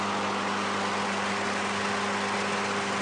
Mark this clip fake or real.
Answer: real